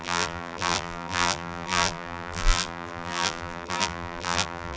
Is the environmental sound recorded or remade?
remade